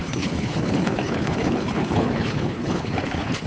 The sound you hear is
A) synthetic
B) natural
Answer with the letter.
A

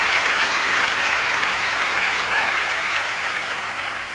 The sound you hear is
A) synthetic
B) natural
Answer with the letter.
A